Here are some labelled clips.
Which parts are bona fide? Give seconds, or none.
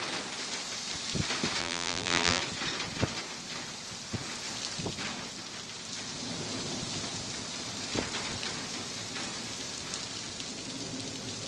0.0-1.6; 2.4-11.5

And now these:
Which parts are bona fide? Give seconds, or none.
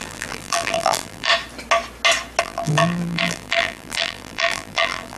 1.3-2.4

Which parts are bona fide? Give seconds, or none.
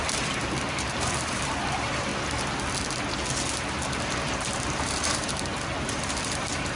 2.1-3.5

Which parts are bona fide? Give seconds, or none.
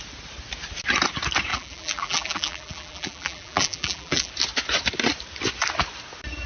0.0-1.5; 4.3-6.5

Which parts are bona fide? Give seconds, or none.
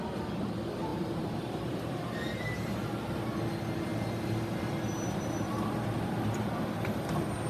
0.0-0.9; 2.9-7.5